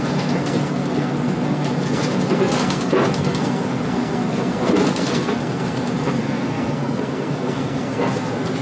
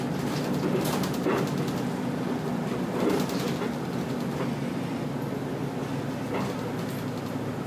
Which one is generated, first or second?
first